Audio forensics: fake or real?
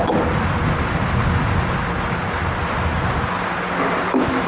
real